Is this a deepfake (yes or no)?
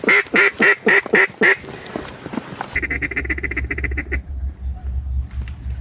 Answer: no